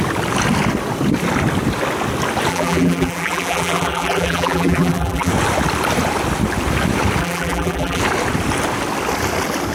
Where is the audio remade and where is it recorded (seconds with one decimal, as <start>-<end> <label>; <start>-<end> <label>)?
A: 0.0-2.5 recorded; 2.5-5.3 remade; 5.3-7.2 recorded; 7.2-8.0 remade; 8.0-9.7 recorded